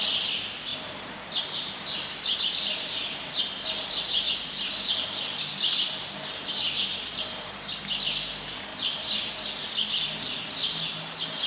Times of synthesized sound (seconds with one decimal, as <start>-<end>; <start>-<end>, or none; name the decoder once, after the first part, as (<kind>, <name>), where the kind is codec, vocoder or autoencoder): 0.7-5.4 (vocoder, BigVGAN v2); 6.9-7.8; 8.7-9.3